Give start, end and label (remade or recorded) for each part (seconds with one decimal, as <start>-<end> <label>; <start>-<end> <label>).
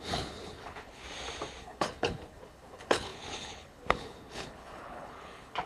0.0-1.0 remade; 1.0-1.6 recorded; 1.6-5.7 remade